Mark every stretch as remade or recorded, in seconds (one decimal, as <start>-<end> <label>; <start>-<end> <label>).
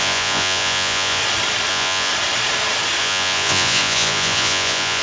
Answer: 0.0-1.2 remade; 1.2-1.7 recorded; 1.7-2.1 remade; 2.1-3.0 recorded; 3.0-5.0 remade